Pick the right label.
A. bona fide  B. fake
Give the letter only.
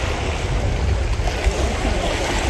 A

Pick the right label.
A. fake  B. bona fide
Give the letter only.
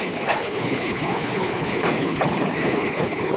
A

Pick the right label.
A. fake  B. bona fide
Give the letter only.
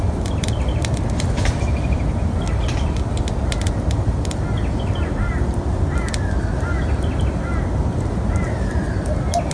B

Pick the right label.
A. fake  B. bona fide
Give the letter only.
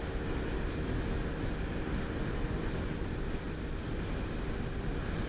B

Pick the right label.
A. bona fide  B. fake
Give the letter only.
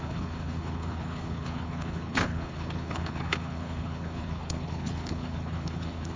B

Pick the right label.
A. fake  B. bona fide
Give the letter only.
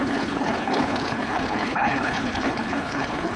A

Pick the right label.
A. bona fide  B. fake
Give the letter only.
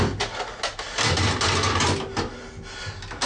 A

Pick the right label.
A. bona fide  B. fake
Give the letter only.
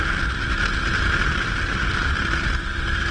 A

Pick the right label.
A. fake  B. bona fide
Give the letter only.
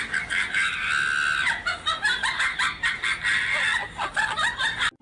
B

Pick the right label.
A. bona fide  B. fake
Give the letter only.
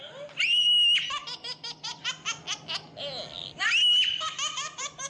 A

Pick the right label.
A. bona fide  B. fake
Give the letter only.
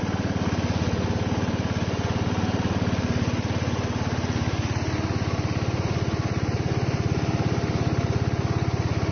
A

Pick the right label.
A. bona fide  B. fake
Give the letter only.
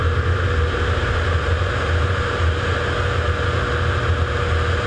A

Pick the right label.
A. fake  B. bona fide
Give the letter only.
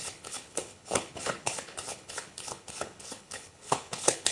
A